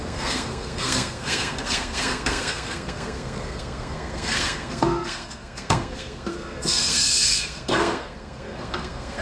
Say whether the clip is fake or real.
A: fake